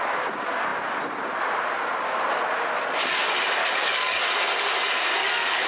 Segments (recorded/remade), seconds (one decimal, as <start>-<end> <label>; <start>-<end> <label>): 0.0-3.6 recorded; 3.6-4.3 remade; 4.3-5.2 recorded; 5.2-5.7 remade